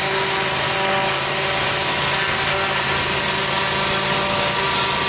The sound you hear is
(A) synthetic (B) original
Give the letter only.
B